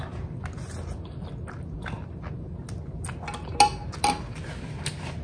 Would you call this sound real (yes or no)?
yes